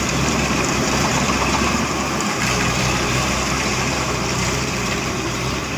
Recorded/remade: remade